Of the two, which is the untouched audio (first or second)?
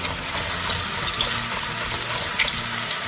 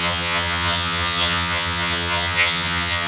first